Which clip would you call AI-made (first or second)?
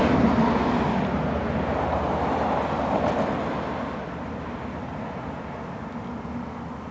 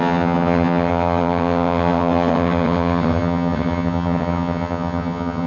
second